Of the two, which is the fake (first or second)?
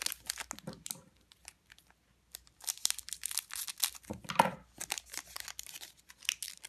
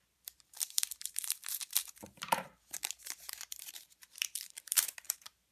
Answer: second